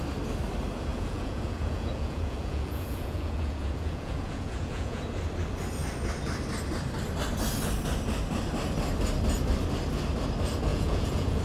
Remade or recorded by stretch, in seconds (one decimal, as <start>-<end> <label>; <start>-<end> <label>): 0.0-0.9 recorded; 0.9-5.0 remade; 5.0-10.7 recorded; 10.7-11.4 remade